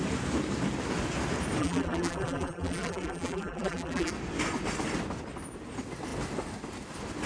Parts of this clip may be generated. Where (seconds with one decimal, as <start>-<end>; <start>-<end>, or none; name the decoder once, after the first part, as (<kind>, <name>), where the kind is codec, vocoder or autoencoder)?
1.6-4.1 (vocoder, BigVGAN v2)